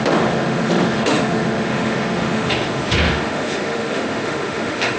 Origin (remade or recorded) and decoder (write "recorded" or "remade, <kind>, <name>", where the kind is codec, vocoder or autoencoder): remade, autoencoder, DAC-VAE